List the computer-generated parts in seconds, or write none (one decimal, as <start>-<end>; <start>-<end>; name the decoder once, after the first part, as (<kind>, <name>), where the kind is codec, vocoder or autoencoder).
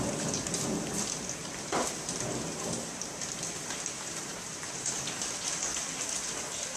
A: 1.4-5.0 (vocoder, BigVGAN v2)